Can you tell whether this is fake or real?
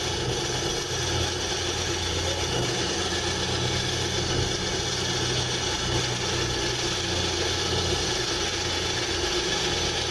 real